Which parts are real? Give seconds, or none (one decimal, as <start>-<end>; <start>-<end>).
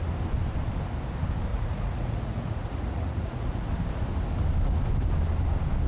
0.0-1.5; 3.7-5.9